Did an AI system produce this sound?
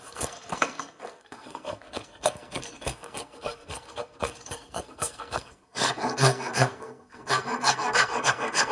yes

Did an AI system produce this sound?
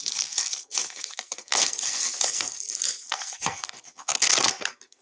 yes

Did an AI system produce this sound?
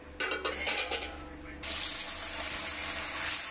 no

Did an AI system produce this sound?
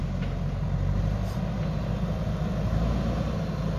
no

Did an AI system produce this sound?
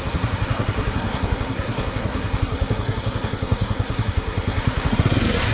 yes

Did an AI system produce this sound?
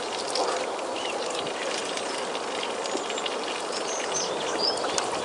no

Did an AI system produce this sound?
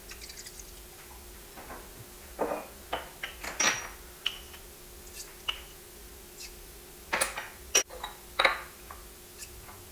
no